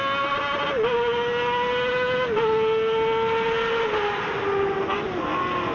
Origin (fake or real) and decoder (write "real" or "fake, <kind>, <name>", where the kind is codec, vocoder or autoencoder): real